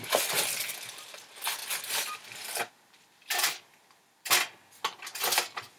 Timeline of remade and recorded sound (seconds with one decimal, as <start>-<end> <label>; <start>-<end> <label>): 0.0-5.8 recorded